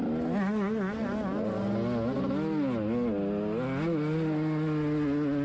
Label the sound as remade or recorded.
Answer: recorded